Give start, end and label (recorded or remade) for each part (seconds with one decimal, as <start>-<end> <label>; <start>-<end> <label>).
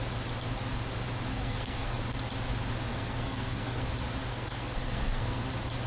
0.0-1.3 recorded; 1.3-2.0 remade; 2.0-2.9 recorded; 2.9-3.9 remade; 3.9-4.3 recorded; 4.3-5.4 remade; 5.4-5.9 recorded